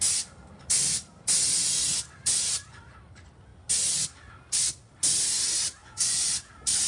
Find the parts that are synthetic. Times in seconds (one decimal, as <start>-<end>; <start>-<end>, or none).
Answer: 5.8-6.5